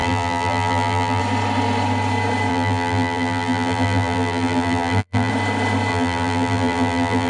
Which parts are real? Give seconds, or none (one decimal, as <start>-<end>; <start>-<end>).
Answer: 1.2-2.5; 5.3-5.9

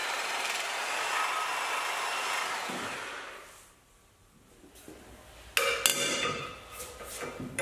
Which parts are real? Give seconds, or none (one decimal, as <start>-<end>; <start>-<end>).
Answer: 0.8-7.6

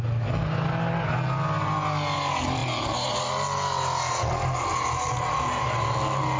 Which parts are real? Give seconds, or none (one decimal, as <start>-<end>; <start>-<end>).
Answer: 0.0-6.4

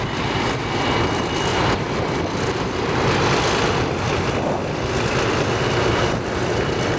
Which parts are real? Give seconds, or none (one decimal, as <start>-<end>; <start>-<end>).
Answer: 0.0-1.5; 2.5-7.0

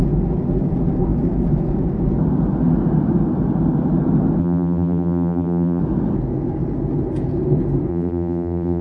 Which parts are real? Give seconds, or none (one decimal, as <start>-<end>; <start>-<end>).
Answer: 0.0-4.4; 5.8-7.9

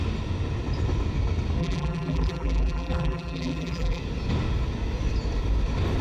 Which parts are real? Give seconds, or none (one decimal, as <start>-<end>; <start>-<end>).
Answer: 0.0-1.6; 4.0-6.0